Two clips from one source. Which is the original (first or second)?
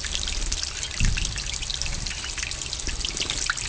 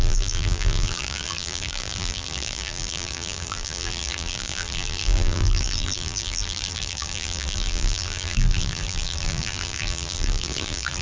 first